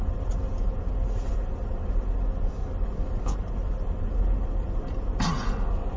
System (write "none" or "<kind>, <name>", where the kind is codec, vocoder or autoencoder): none